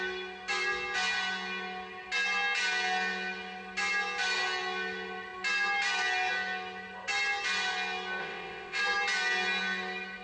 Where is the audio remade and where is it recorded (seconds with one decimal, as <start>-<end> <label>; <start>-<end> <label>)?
0.0-8.2 recorded; 8.2-8.8 remade; 8.8-10.2 recorded